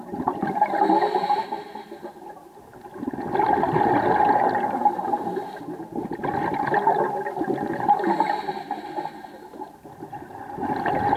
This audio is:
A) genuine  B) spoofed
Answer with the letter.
A